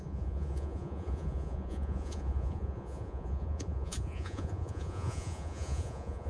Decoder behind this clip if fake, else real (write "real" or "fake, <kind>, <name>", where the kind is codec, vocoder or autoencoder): fake, vocoder, Vocos